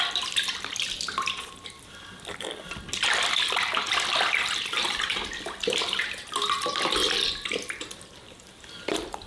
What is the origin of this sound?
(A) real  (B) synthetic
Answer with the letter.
B